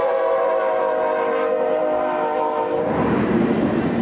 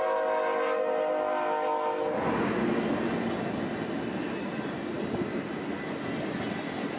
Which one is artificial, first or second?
first